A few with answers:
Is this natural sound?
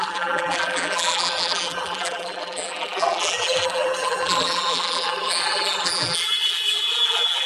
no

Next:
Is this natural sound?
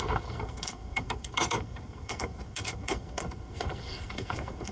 no